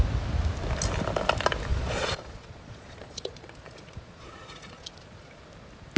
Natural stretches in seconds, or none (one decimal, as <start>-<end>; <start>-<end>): 0.0-1.7; 5.3-6.0